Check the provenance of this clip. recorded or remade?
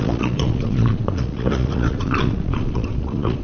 remade